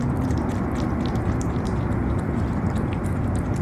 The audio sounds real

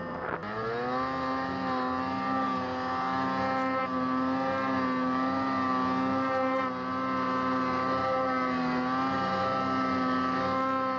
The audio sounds real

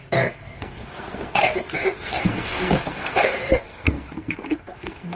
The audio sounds fake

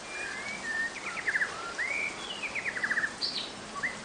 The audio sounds real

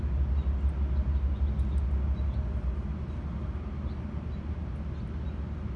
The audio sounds real